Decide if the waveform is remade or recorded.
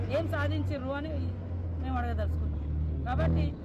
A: recorded